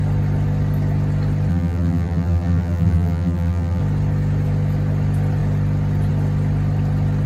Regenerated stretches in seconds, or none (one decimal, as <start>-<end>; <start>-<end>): 1.5-3.8